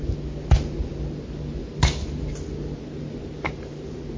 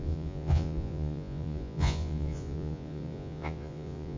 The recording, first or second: first